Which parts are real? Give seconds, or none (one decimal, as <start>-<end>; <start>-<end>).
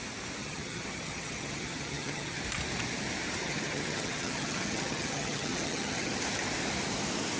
0.0-0.4; 2.4-3.4; 6.2-7.4